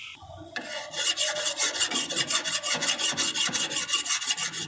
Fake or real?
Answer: fake